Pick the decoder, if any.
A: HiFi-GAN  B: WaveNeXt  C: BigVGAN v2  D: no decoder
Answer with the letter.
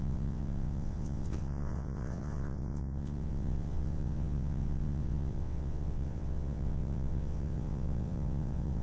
B